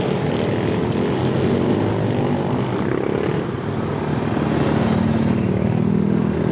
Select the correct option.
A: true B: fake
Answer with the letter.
A